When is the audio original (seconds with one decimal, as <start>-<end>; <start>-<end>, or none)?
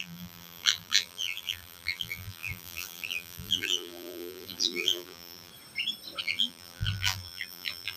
5.5-6.2